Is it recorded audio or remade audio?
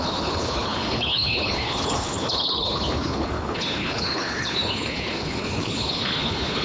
remade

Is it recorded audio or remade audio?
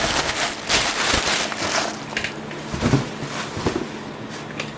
recorded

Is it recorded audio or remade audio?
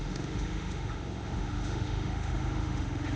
remade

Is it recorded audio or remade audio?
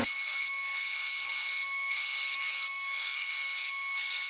remade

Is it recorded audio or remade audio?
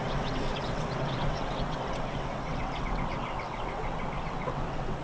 remade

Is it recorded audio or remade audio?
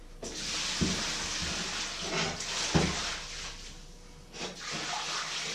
recorded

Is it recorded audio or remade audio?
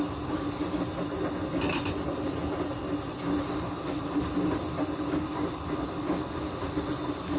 recorded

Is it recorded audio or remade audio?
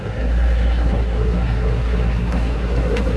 remade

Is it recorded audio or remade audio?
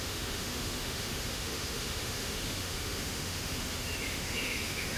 remade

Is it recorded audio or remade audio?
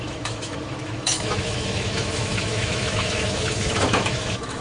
remade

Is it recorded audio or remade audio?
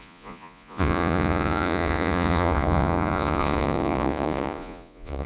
remade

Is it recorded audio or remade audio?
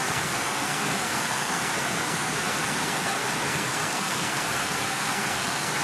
remade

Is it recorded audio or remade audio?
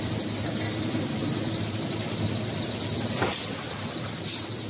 recorded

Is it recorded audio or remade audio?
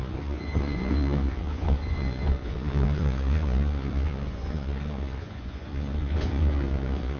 remade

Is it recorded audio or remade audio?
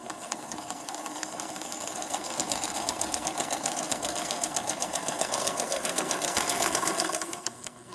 remade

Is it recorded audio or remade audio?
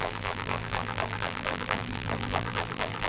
remade